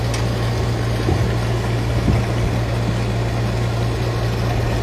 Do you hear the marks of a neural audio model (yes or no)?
no